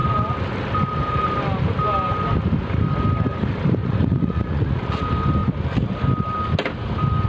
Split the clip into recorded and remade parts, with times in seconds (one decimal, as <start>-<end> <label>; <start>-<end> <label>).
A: 0.0-3.8 recorded; 3.8-5.0 remade; 5.0-7.3 recorded